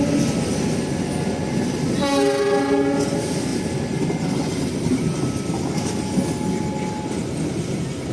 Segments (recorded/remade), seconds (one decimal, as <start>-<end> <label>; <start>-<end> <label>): 0.0-8.1 recorded